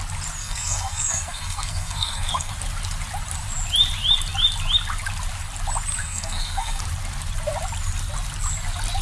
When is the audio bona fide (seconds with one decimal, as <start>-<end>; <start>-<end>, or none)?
0.0-0.4; 2.5-6.0; 6.8-9.0